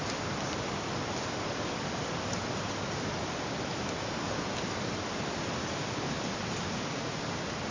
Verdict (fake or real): real